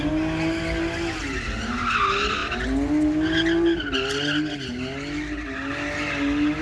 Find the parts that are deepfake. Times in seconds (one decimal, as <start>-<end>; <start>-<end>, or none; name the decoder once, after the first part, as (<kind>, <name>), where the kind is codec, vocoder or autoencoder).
none